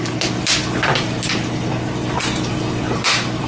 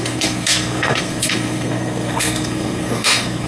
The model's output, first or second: second